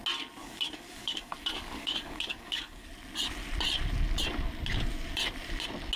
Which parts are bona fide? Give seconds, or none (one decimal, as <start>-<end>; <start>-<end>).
0.0-0.4; 2.9-6.0

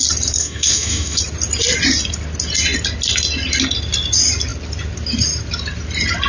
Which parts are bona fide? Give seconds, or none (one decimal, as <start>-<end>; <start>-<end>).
0.0-0.4; 1.2-6.3

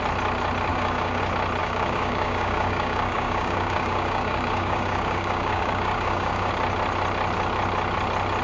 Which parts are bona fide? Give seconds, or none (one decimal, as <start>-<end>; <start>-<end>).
0.0-0.7; 1.2-1.6; 6.5-8.4

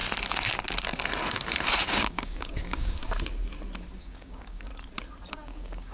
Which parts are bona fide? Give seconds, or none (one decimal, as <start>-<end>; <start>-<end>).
0.0-1.9; 3.0-4.0; 4.7-5.3

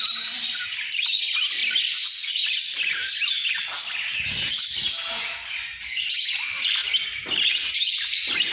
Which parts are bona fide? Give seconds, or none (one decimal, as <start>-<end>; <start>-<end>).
0.0-8.5

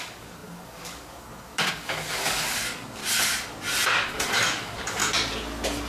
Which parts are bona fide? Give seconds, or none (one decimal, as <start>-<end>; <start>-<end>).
3.0-3.9; 5.0-5.9